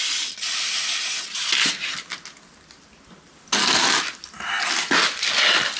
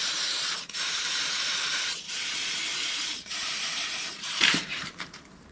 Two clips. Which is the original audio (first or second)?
first